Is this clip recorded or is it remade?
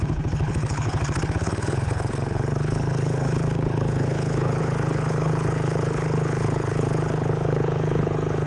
remade